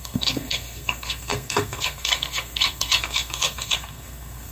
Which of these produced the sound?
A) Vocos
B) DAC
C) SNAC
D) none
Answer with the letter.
C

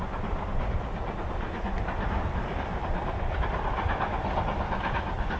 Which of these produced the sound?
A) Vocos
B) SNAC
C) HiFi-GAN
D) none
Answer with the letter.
D